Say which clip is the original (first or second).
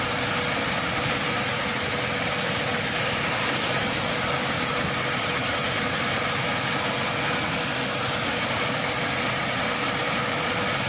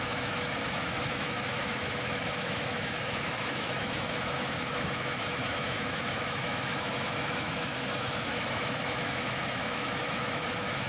first